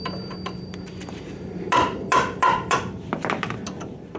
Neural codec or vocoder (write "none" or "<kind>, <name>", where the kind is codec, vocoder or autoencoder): vocoder, BigVGAN v2